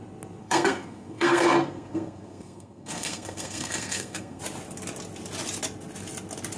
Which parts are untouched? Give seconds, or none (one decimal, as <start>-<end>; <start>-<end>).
0.0-0.4; 4.4-6.6